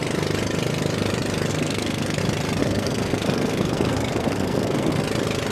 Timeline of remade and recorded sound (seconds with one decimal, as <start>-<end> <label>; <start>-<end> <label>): 0.0-1.5 recorded; 1.5-2.2 remade; 2.2-2.6 recorded; 2.6-4.9 remade; 4.9-5.5 recorded